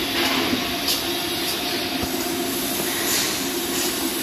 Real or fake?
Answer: real